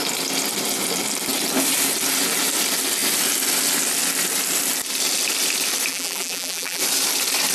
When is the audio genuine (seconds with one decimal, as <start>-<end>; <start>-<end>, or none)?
0.0-5.9; 6.8-7.5